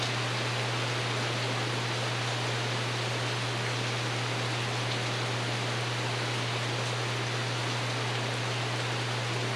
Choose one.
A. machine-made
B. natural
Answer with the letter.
B